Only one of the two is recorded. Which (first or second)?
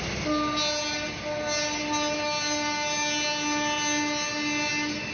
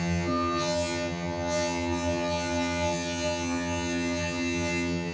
first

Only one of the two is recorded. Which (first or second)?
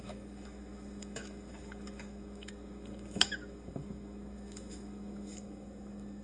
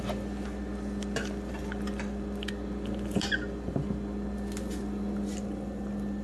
second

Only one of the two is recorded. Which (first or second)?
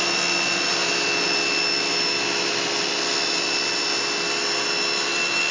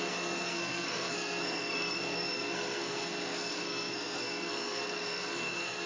first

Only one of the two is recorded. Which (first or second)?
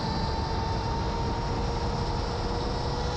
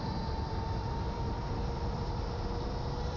first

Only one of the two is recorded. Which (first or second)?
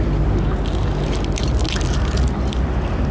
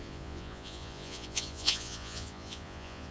first